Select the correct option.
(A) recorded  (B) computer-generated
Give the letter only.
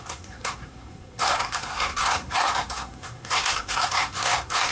B